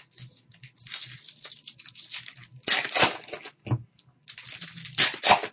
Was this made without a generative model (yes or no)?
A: yes